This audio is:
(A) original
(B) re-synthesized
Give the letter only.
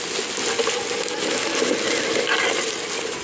A